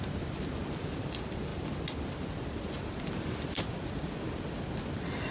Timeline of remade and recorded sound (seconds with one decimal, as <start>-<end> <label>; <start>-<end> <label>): 0.0-5.3 recorded